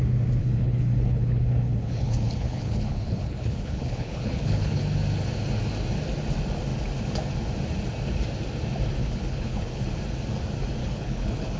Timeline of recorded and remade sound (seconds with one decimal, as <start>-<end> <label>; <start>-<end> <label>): 0.0-0.4 recorded; 0.4-4.8 remade; 4.8-9.0 recorded; 9.0-9.8 remade; 9.8-10.8 recorded; 10.8-11.6 remade